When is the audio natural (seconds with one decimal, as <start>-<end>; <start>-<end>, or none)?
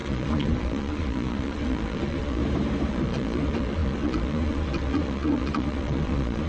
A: 2.4-2.9